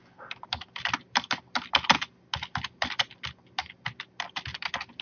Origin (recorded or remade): recorded